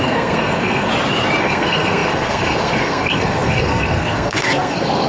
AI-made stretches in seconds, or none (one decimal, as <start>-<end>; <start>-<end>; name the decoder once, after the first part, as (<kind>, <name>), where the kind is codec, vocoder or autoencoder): 0.0-0.9 (codec, SNAC); 1.4-5.1